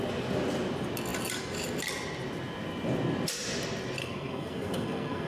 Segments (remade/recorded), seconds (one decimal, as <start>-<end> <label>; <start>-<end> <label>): 0.0-4.0 recorded; 4.0-5.3 remade